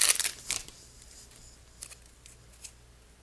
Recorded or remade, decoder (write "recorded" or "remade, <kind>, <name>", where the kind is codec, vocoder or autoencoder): recorded